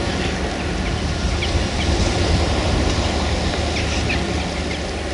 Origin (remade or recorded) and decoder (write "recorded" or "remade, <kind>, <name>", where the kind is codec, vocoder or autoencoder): recorded